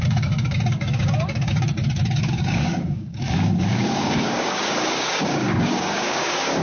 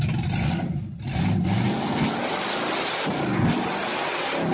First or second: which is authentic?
second